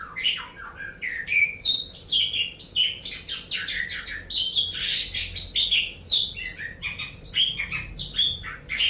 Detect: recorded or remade recorded